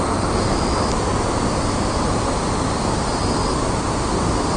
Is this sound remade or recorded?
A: recorded